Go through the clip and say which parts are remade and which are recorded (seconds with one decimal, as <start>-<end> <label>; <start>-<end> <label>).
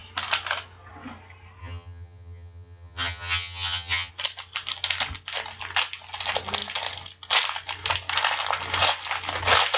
0.0-1.6 recorded; 1.6-4.1 remade; 4.1-9.8 recorded